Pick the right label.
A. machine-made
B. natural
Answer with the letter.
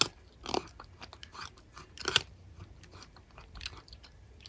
B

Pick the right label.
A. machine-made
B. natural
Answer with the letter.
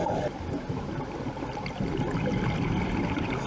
B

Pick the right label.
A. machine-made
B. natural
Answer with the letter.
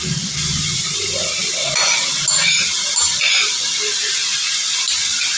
B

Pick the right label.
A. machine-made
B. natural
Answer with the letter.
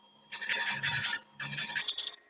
A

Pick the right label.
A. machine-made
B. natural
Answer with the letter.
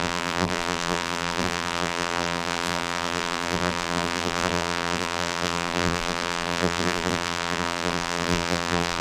A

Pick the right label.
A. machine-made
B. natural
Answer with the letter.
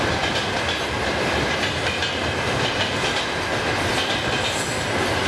B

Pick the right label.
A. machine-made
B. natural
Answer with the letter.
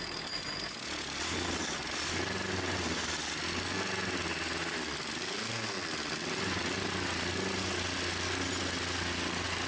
B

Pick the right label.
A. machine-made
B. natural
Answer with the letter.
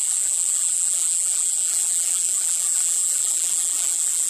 A